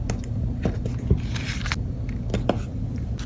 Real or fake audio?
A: real